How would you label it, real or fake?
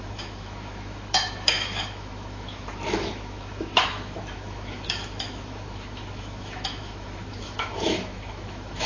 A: fake